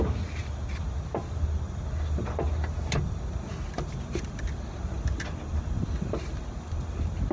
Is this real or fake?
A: real